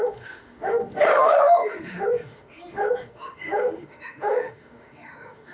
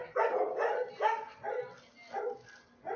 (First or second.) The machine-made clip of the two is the first